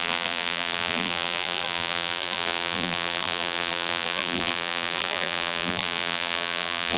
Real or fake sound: fake